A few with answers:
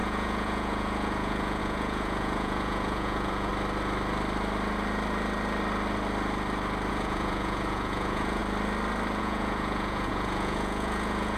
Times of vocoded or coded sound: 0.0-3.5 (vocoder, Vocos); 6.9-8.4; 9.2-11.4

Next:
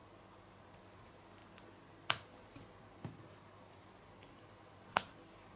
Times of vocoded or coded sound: none

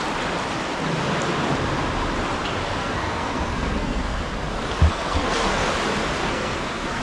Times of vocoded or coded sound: 2.8-4.2 (codec, SNAC); 4.9-5.7; 6.2-7.0

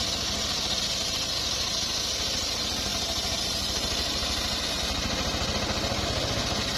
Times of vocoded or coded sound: none

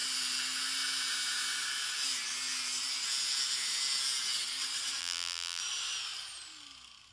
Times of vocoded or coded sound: 5.0-5.6 (vocoder, BigVGAN v2)